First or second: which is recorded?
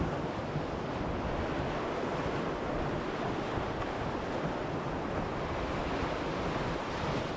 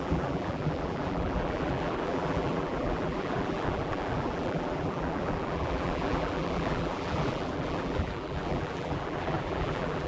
first